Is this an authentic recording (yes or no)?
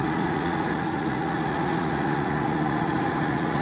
no